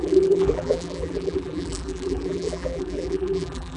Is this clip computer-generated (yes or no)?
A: yes